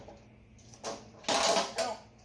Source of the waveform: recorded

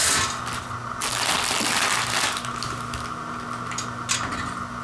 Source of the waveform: recorded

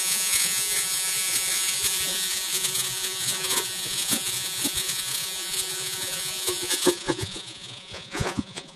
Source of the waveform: remade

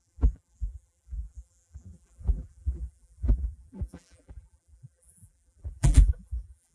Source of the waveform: remade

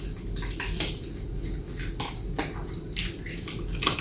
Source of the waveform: recorded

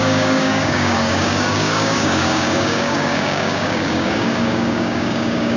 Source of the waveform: remade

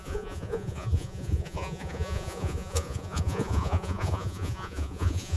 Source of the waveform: remade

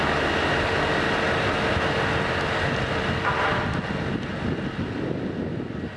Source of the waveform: recorded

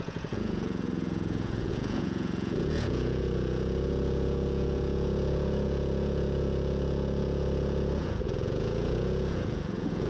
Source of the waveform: remade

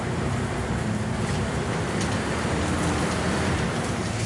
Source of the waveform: remade